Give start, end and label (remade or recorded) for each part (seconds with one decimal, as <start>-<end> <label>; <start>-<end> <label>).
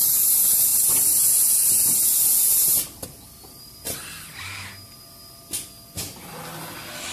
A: 0.0-7.1 recorded